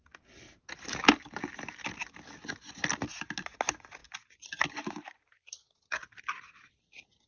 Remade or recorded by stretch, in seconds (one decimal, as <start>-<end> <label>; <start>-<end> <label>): 0.0-7.3 recorded